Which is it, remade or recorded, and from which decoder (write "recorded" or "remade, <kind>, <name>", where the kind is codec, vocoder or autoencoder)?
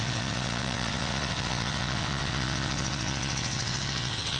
remade, vocoder, WaveNeXt